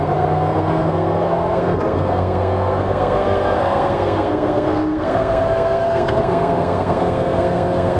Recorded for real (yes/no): no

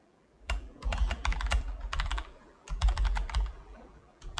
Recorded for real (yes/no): no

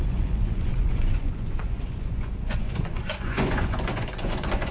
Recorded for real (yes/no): no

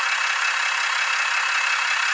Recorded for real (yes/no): yes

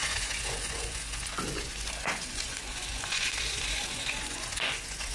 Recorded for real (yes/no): no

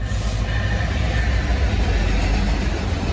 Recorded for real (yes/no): yes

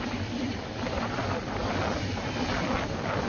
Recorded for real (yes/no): yes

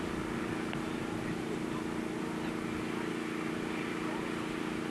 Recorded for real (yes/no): yes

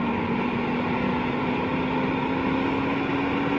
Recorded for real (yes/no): yes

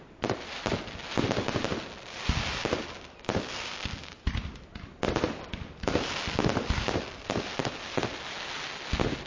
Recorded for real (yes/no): yes